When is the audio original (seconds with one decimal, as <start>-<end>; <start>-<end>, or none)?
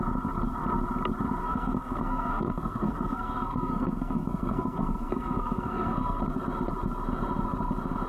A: 0.0-1.4; 6.2-8.1